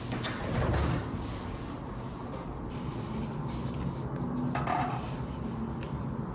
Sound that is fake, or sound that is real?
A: real